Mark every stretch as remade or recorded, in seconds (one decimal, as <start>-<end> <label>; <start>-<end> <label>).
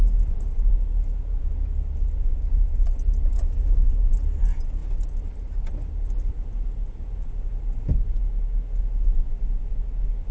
0.0-10.3 recorded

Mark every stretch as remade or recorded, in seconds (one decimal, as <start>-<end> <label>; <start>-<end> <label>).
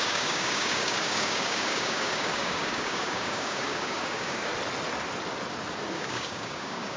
0.0-4.5 remade; 4.5-5.9 recorded; 5.9-7.0 remade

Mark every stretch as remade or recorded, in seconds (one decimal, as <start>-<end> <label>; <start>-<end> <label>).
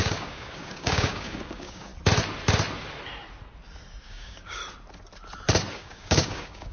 0.0-1.9 remade; 1.9-4.0 recorded; 4.0-4.6 remade; 4.6-5.7 recorded; 5.7-6.7 remade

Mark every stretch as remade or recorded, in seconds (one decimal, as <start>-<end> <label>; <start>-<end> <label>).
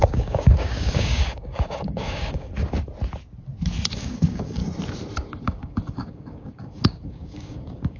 0.0-2.5 remade; 2.5-3.9 recorded; 3.9-4.6 remade; 4.6-5.4 recorded; 5.4-8.0 remade